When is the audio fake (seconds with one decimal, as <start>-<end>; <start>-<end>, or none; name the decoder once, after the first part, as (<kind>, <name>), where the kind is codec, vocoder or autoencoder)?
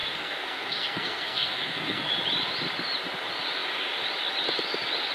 0.0-2.1 (codec, SNAC)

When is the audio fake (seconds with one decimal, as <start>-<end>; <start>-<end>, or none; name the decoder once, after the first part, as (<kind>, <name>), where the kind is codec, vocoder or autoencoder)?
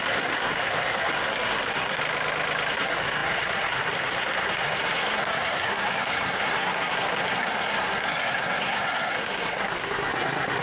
0.0-2.0 (codec, SNAC); 2.7-10.6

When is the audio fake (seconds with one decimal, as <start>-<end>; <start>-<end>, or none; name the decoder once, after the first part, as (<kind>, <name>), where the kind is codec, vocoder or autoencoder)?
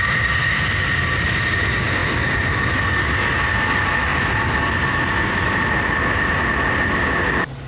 none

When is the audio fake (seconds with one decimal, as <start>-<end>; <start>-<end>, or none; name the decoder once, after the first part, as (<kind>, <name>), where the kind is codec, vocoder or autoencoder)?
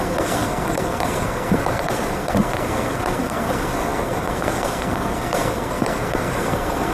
0.0-6.9 (codec, SNAC)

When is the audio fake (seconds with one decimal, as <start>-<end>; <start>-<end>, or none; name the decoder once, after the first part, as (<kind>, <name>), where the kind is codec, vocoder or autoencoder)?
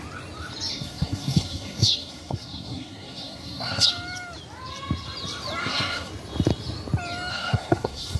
0.7-3.9 (codec, SNAC); 5.6-6.1; 7.3-8.2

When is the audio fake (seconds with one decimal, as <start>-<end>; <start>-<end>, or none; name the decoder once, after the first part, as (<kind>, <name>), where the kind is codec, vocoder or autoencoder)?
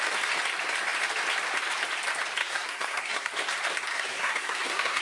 2.4-3.3 (codec, SNAC); 3.9-5.0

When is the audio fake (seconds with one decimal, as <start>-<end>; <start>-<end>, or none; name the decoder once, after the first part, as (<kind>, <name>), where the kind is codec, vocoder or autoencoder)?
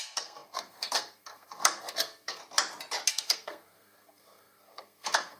0.0-2.4 (codec, SNAC); 3.1-5.4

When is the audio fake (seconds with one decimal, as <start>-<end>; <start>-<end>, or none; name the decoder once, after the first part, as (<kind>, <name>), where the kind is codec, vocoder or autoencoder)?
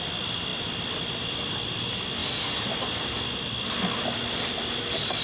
none